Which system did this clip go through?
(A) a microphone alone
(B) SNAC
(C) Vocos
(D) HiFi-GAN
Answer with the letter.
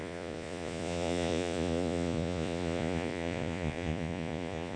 C